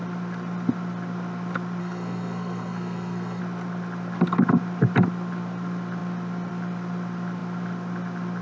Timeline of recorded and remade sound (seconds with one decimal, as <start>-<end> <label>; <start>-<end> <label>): 0.0-1.8 recorded; 1.8-3.4 remade; 3.4-8.4 recorded

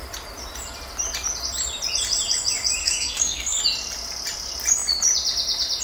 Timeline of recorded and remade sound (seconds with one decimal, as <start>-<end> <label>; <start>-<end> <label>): 0.0-2.8 recorded; 2.8-3.6 remade; 3.6-5.8 recorded